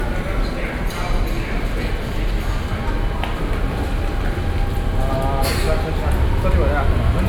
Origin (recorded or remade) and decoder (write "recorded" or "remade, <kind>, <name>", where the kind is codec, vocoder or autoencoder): recorded